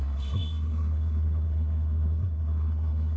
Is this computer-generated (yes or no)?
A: yes